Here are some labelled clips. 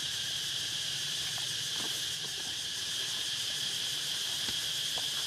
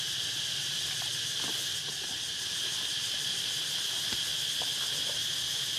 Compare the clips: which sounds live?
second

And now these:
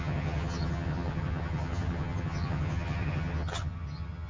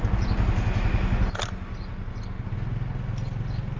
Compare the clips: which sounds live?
second